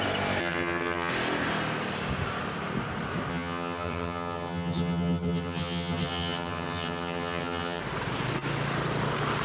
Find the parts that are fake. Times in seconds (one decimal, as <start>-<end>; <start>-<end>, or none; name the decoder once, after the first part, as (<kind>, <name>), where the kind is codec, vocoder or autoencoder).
0.4-1.1 (vocoder, HiFi-GAN); 3.3-7.8